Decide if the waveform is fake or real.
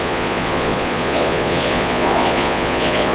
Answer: fake